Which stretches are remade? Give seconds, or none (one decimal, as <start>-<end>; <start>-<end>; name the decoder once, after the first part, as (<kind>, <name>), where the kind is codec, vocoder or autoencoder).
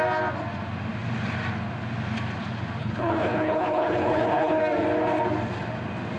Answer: 2.8-4.6 (codec, HILCodec)